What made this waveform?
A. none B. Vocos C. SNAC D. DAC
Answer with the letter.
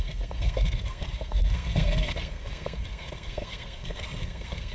C